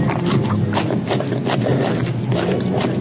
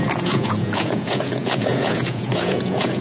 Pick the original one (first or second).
first